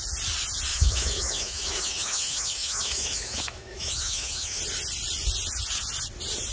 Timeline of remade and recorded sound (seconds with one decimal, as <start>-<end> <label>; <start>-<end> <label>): 0.0-0.7 recorded; 0.7-4.6 remade; 4.6-6.5 recorded